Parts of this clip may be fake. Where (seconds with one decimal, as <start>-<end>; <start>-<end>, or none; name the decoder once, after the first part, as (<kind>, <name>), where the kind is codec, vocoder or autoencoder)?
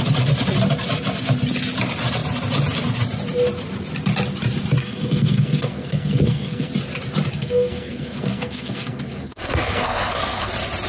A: 4.8-6.7 (codec, SNAC); 7.3-10.5